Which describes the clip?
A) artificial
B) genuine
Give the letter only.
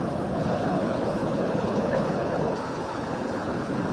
A